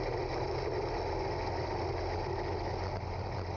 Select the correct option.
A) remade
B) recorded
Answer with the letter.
B